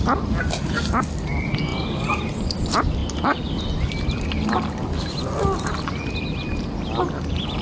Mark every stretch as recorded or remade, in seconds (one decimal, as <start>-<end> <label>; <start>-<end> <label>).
0.0-7.6 recorded